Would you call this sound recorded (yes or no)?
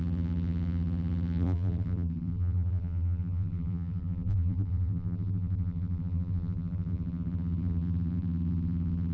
no